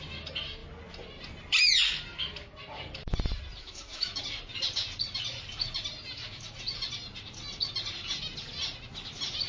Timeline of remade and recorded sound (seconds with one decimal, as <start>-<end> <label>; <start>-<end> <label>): 0.0-3.6 recorded; 3.6-4.2 remade; 4.2-9.5 recorded